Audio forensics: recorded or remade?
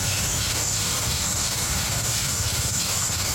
remade